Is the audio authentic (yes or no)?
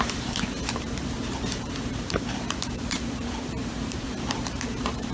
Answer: no